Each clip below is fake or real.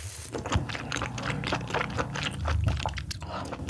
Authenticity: real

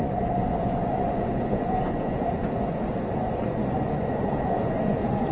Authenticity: fake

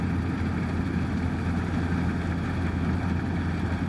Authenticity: real